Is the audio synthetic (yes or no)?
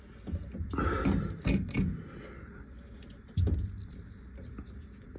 no